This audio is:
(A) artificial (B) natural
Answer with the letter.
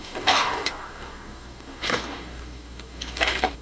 A